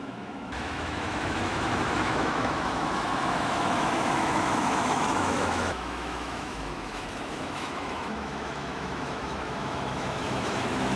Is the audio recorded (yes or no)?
no